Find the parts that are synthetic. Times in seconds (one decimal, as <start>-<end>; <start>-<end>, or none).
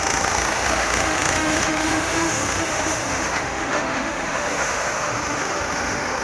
0.0-6.2